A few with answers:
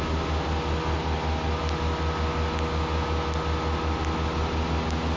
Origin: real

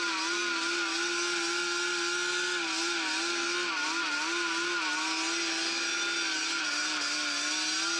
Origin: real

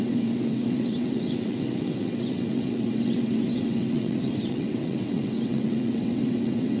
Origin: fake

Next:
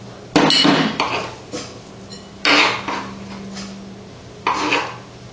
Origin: real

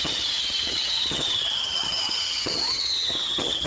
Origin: fake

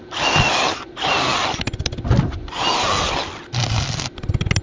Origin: real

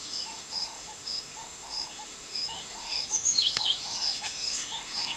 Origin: fake